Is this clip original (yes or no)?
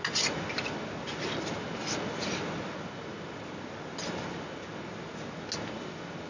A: yes